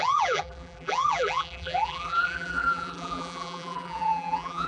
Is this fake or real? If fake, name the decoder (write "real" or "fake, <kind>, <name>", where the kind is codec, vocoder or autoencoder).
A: fake, vocoder, BigVGAN v2